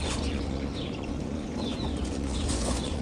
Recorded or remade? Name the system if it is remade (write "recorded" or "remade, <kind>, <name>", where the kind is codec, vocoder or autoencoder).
remade, vocoder, Vocos